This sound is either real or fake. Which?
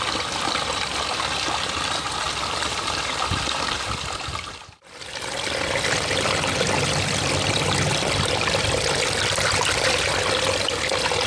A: real